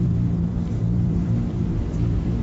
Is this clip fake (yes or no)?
yes